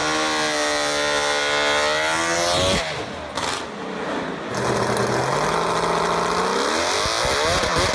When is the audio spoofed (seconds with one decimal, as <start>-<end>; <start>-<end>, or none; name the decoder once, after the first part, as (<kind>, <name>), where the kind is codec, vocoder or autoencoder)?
none

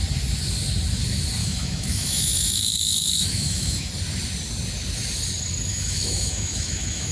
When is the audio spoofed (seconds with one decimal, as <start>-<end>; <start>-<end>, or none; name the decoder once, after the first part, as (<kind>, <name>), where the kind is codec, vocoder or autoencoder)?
1.4-3.9 (autoencoder, DAC-VAE); 5.7-7.1

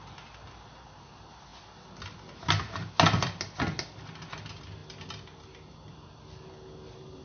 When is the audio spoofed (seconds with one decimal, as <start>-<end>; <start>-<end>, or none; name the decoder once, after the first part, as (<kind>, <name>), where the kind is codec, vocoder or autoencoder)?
none

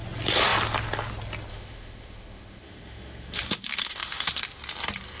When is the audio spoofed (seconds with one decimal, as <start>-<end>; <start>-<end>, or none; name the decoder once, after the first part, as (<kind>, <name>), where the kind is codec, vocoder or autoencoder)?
1.5-4.6 (autoencoder, DAC-VAE)

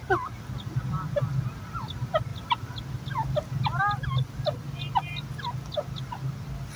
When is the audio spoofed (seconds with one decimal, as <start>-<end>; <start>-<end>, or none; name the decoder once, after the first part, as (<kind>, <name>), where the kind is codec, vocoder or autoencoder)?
none

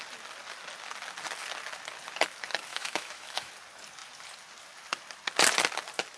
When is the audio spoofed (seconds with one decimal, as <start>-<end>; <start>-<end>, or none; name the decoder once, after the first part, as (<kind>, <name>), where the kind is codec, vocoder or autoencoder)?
2.7-3.5 (autoencoder, DAC-VAE)